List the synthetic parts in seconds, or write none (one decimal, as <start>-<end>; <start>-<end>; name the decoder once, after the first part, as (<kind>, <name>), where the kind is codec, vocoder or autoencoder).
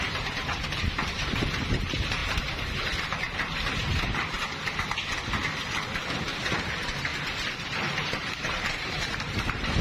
0.0-2.2 (vocoder, BigVGAN v2); 3.0-4.4; 6.4-7.1; 7.6-9.8